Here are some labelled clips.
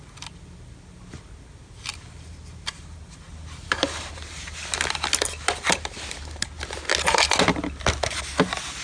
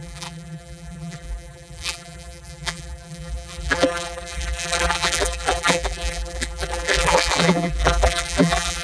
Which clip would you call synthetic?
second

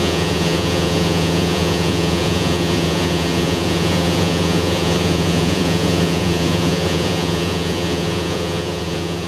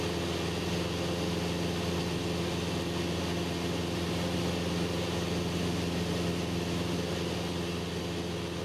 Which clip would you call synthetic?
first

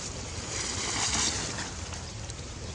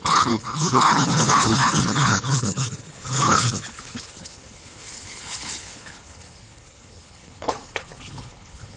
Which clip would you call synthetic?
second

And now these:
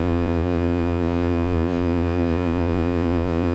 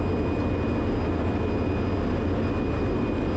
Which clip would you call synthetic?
first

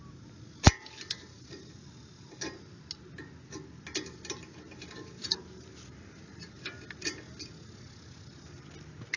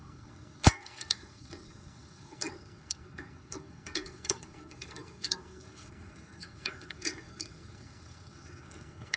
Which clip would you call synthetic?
second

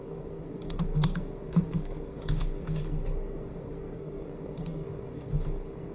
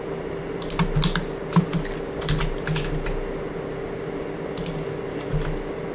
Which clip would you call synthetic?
first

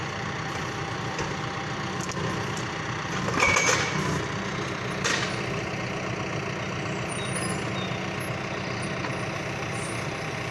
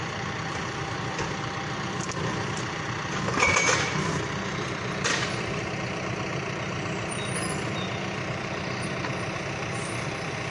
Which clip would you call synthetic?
second